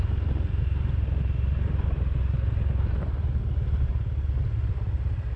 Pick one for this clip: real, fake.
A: real